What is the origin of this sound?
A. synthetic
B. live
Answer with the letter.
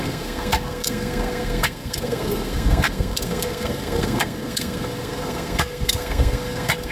A